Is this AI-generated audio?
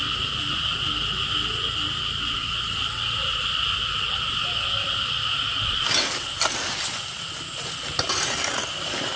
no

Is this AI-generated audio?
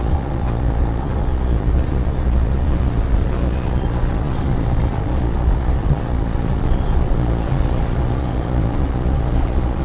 yes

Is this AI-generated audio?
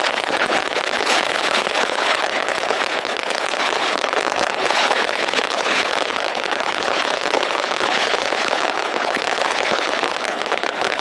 yes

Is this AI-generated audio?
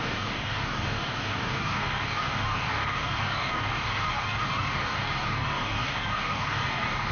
yes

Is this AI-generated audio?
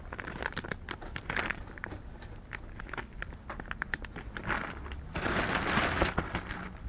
no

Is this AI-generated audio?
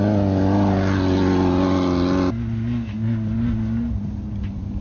no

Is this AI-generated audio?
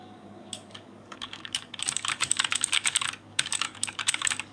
yes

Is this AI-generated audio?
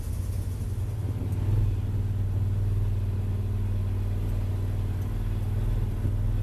no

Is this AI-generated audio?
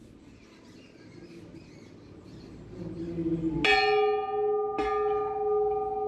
no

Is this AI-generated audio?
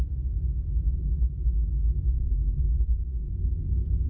no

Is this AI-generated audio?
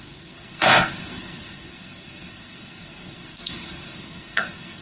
yes